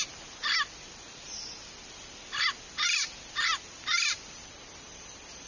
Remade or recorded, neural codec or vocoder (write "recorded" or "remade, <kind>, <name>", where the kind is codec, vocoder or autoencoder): recorded